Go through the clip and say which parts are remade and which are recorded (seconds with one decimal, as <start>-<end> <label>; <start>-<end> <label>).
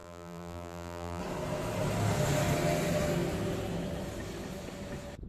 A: 0.0-1.2 remade; 1.2-5.3 recorded